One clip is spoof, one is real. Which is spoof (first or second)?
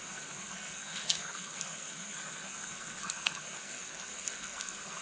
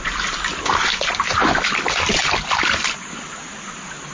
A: first